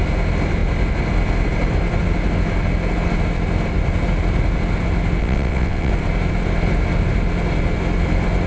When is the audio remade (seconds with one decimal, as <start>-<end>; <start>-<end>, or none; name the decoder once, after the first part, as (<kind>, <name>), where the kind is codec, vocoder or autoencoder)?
5.2-5.9 (vocoder, WaveNeXt)